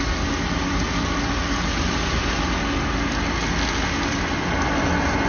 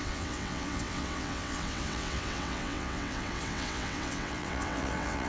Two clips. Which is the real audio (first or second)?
first